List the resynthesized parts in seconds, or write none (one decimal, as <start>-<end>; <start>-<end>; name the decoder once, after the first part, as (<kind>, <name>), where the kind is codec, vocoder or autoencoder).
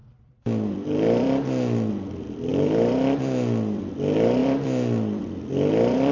0.0-1.9 (vocoder, BigVGAN v2); 2.5-3.9; 4.4-6.1